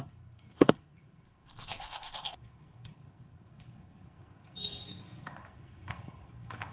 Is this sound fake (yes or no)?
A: yes